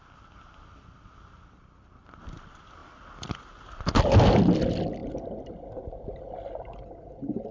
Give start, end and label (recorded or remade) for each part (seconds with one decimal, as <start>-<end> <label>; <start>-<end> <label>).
0.0-7.5 recorded